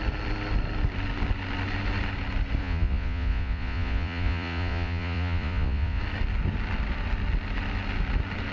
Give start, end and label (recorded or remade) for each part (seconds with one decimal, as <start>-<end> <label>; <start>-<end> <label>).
0.0-2.6 recorded; 2.6-6.0 remade; 6.0-8.5 recorded